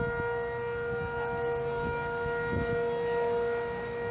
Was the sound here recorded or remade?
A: recorded